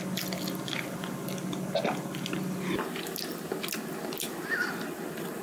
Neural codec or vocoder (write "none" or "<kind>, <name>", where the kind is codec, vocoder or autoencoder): none